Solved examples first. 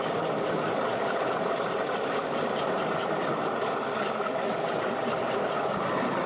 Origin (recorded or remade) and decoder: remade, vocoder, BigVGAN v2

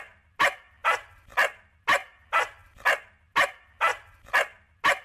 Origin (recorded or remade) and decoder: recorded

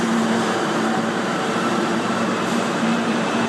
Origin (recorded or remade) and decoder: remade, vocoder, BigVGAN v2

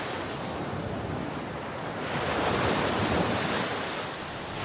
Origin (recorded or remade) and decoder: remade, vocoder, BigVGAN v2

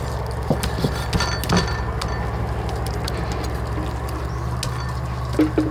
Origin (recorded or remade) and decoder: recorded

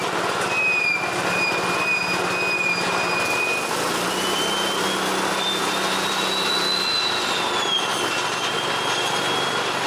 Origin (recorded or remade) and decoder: recorded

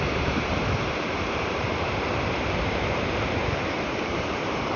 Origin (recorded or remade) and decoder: remade, vocoder, BigVGAN v2